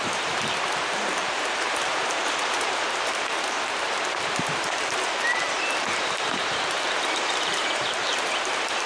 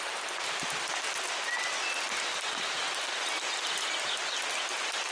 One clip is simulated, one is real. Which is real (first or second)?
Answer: second